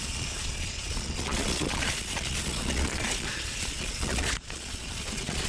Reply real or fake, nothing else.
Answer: fake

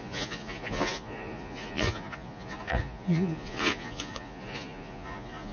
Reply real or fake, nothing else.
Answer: fake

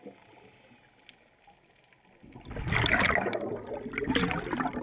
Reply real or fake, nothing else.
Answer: real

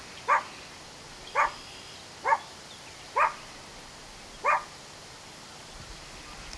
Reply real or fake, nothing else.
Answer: real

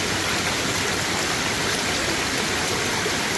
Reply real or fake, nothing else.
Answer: real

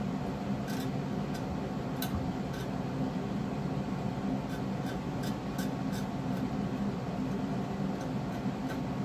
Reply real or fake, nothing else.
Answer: real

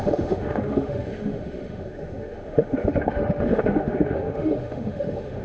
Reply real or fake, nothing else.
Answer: fake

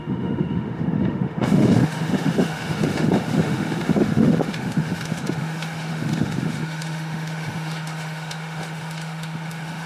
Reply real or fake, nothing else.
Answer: fake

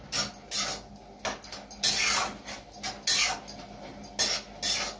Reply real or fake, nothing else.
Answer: real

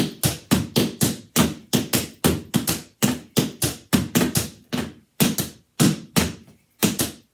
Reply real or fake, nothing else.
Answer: real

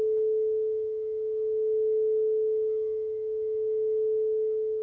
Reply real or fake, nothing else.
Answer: real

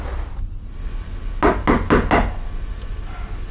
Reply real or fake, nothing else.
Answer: real